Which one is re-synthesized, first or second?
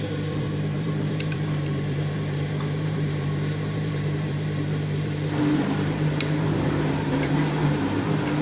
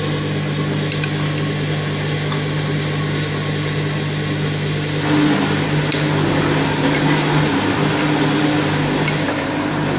first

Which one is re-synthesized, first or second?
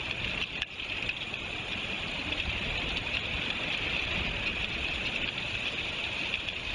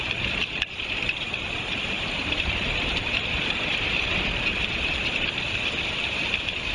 second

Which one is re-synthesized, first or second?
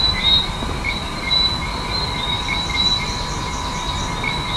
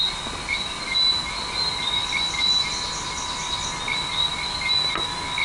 first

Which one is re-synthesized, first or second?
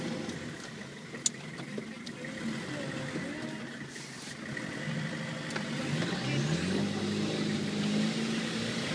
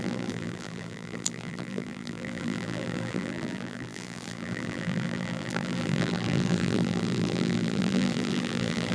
second